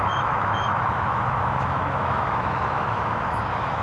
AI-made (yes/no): yes